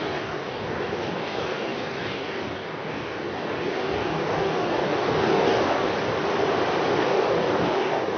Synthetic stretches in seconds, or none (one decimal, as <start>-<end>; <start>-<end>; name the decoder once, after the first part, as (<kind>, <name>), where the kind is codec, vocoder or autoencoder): 0.0-5.9 (codec, DAC); 6.9-8.2